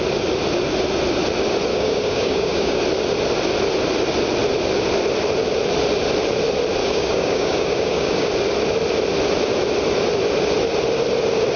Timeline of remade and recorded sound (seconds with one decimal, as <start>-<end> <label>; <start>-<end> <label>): 0.0-1.7 recorded; 1.7-2.8 remade; 2.8-6.8 recorded; 6.8-8.3 remade; 8.3-11.6 recorded

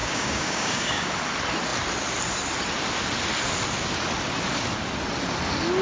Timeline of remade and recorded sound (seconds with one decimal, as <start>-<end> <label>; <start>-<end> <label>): 0.0-1.1 remade; 1.1-5.8 recorded

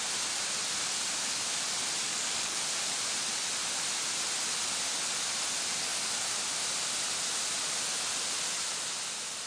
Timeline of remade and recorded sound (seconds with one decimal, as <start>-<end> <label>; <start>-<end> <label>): 0.0-2.1 recorded; 2.1-2.6 remade; 2.6-9.5 recorded

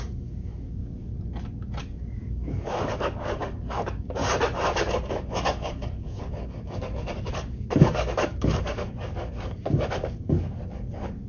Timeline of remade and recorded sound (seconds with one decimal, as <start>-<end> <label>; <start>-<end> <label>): 0.0-1.1 remade; 1.1-1.8 recorded; 1.8-4.2 remade; 4.2-5.1 recorded; 5.1-11.3 remade

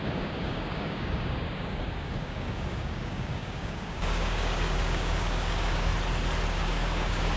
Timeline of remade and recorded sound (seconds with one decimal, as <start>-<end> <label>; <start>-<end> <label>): 0.0-5.9 remade; 5.9-6.5 recorded; 6.5-7.4 remade

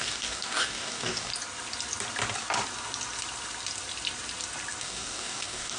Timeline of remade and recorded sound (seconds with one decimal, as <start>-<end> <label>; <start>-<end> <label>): 0.0-1.3 remade; 1.3-4.8 recorded; 4.8-5.8 remade